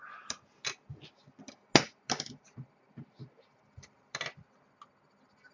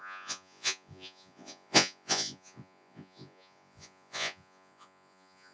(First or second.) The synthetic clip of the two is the second